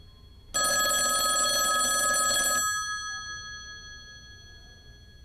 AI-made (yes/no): no